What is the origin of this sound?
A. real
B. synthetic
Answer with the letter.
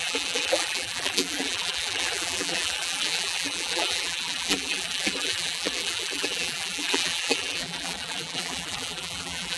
B